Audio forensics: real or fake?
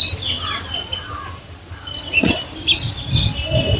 real